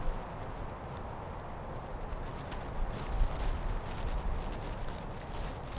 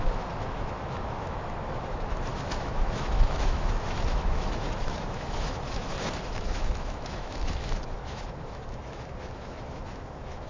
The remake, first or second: second